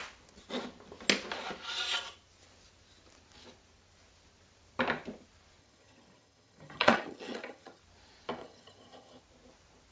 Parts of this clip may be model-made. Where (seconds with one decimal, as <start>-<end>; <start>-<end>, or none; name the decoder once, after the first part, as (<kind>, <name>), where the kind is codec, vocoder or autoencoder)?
5.6-7.8 (vocoder, HiFi-GAN); 8.4-9.2